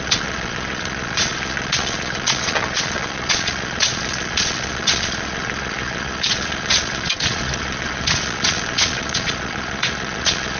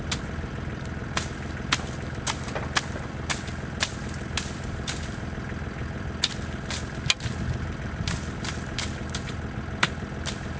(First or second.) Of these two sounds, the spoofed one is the first